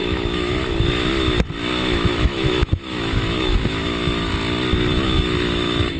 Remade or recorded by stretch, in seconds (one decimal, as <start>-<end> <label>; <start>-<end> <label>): 0.0-0.5 remade; 0.5-1.7 recorded; 1.7-4.3 remade; 4.3-4.9 recorded; 4.9-6.0 remade